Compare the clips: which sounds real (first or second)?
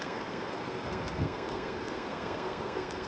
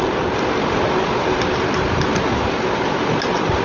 second